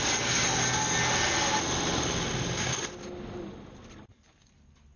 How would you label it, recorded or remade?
recorded